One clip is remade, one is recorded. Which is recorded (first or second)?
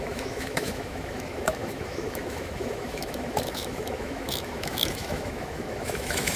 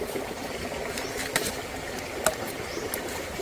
second